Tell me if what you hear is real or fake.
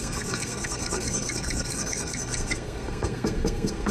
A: fake